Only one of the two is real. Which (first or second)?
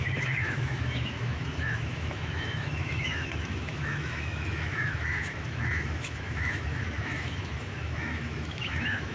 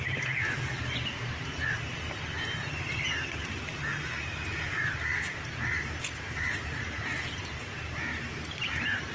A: second